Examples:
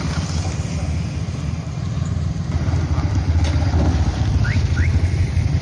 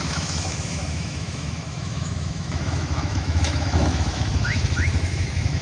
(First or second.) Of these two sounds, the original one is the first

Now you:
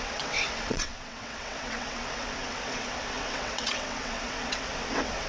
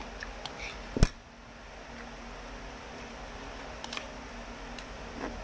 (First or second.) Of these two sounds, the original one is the second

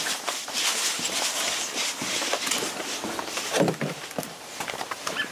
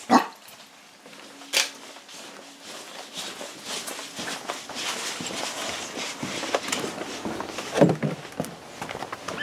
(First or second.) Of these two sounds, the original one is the second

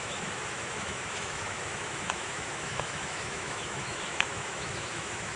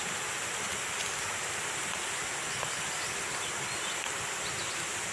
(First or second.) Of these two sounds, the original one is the second